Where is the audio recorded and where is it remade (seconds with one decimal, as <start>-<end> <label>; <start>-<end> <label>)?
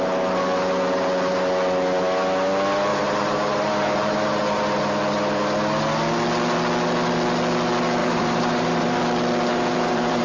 0.0-2.9 recorded; 2.9-4.6 remade; 4.6-8.0 recorded; 8.0-9.0 remade; 9.0-9.5 recorded; 9.5-10.2 remade